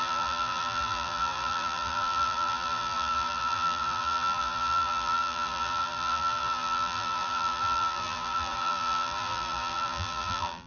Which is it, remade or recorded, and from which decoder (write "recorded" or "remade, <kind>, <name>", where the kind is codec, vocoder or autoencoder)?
remade, vocoder, BigVGAN v2